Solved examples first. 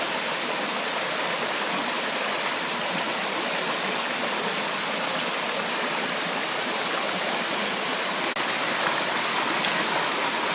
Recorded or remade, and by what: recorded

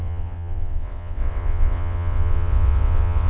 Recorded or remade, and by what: remade, vocoder, WaveNeXt